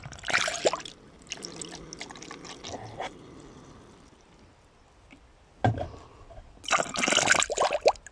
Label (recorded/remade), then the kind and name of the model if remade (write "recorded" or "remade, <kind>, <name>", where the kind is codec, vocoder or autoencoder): recorded